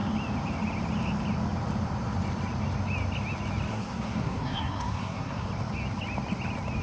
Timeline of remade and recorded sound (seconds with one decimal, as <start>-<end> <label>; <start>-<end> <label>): 0.0-3.7 recorded; 3.7-5.5 remade; 5.5-6.8 recorded